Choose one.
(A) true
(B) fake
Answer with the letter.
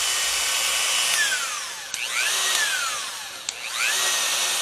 A